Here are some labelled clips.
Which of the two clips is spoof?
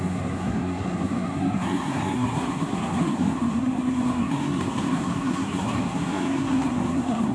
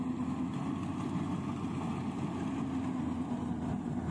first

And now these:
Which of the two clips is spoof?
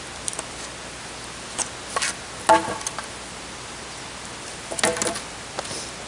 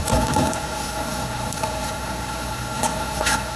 second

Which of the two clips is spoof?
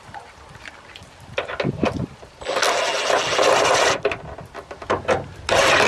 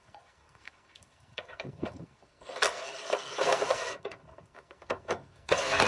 second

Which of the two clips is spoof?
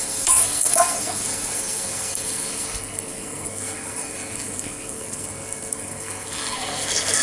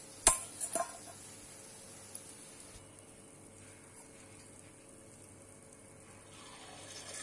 first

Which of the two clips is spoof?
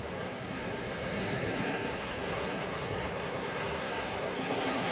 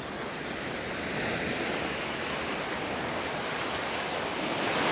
first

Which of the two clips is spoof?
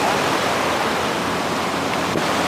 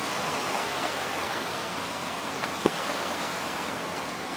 second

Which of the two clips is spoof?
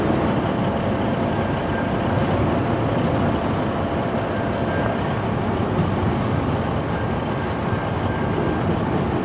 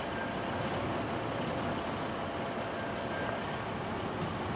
first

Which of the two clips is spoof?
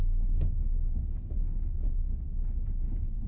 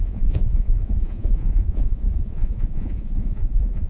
second